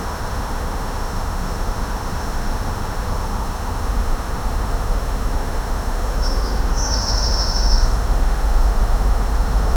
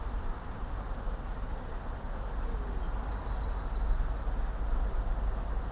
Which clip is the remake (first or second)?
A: first